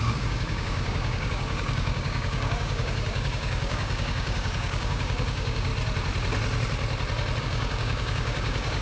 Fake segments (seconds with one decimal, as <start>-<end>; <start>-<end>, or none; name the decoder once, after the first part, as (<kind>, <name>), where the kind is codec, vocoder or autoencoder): 0.0-5.7 (codec, DAC); 7.4-8.8